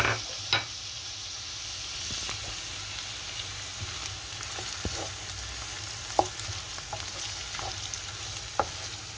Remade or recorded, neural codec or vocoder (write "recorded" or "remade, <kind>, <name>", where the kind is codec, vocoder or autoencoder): recorded